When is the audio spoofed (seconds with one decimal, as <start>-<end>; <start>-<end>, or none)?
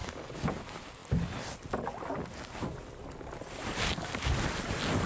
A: 0.0-0.5